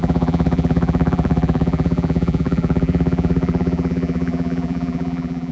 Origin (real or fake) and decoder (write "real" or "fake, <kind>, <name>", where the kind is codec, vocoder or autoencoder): fake, vocoder, BigVGAN v2